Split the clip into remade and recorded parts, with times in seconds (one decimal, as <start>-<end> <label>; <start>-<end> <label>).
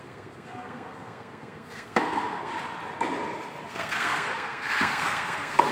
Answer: 0.0-2.5 remade; 2.5-3.7 recorded; 3.7-5.7 remade